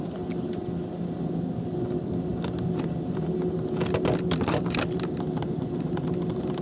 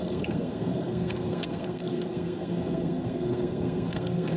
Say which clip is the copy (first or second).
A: second